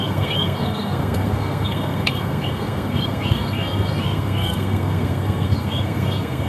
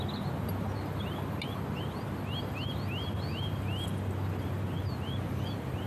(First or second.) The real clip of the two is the second